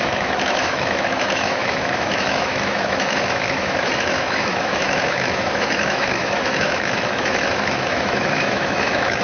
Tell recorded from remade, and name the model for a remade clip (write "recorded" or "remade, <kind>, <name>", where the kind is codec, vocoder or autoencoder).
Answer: remade, autoencoder, DAC-VAE